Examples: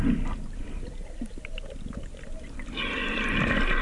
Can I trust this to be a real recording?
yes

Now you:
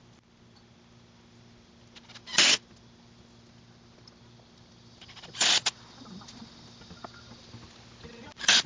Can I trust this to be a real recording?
yes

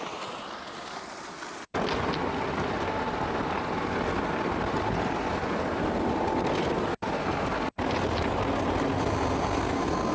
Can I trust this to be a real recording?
yes